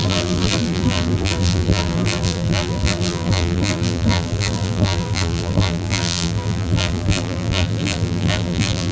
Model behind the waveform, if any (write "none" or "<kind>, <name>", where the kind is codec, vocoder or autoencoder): vocoder, BigVGAN v2